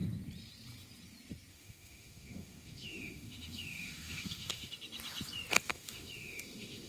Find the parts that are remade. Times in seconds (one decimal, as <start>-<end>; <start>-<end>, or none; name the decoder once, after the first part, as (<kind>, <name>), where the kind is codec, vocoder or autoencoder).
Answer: 1.5-4.7 (autoencoder, DAC-VAE); 5.7-6.9